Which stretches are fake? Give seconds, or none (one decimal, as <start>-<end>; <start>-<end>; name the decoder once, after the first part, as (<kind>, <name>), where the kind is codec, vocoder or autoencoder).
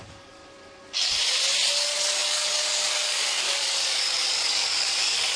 0.0-0.4 (codec, DAC); 1.7-5.4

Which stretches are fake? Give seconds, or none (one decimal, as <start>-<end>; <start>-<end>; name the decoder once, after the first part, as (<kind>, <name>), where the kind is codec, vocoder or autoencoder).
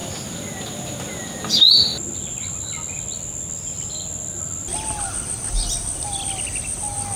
none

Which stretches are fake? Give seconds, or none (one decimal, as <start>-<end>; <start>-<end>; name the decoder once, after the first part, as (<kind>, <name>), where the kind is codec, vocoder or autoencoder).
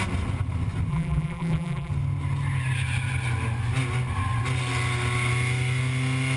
0.9-1.9 (vocoder, BigVGAN v2)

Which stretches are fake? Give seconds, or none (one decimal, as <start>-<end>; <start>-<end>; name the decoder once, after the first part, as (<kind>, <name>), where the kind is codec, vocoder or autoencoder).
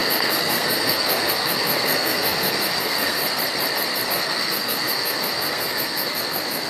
0.0-3.2 (codec, SNAC); 4.1-6.7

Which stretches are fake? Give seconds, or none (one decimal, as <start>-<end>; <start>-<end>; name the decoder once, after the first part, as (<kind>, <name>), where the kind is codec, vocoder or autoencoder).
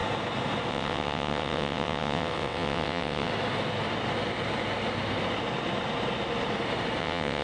0.7-3.3 (vocoder, WaveNeXt); 7.0-7.4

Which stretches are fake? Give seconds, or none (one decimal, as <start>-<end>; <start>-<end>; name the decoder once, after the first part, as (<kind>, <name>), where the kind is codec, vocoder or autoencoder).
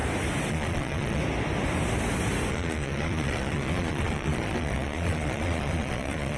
0.5-1.2 (vocoder, Vocos); 2.5-6.4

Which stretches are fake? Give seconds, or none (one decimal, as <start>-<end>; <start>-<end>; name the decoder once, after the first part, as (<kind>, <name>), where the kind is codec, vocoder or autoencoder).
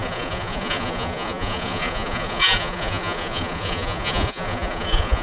0.0-5.2 (vocoder, Vocos)